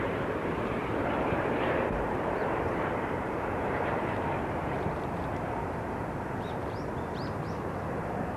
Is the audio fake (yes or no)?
yes